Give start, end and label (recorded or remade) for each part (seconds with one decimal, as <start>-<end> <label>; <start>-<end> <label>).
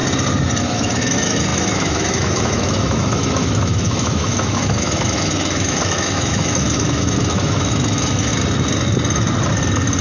0.0-0.6 recorded; 0.6-8.3 remade; 8.3-10.0 recorded